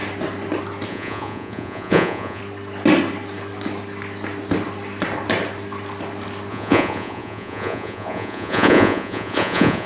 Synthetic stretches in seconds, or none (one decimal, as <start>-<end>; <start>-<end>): 0.9-2.4; 6.5-9.9